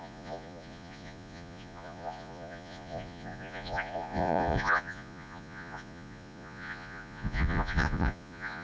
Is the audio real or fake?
fake